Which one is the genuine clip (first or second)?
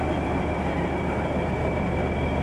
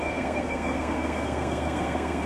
first